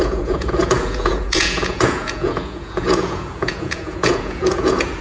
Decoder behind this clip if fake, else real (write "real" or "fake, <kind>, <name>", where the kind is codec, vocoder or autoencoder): fake, vocoder, Vocos